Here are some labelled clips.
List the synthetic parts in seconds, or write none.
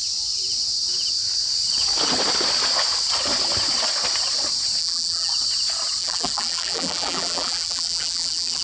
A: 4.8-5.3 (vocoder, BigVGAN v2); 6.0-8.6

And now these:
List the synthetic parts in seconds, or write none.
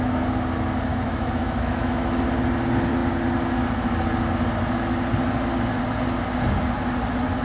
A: 0.9-2.2 (autoencoder, DAC-VAE)